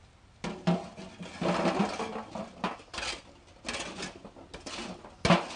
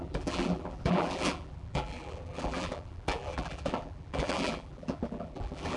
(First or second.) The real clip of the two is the first